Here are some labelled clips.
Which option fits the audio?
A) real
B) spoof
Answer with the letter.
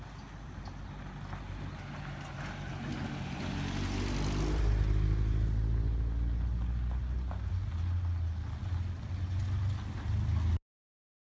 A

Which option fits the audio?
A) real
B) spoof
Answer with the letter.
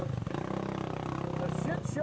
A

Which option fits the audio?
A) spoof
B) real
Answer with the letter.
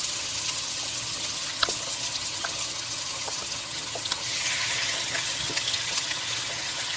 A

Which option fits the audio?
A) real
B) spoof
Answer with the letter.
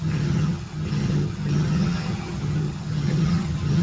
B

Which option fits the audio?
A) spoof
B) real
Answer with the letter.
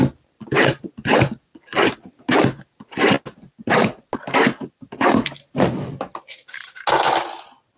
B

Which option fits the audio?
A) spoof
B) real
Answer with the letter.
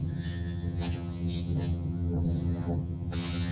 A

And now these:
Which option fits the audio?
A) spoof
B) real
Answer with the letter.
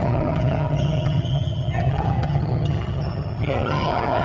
A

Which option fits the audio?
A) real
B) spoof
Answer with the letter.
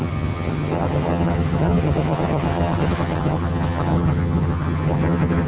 B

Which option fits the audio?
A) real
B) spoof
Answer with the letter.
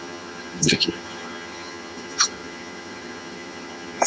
B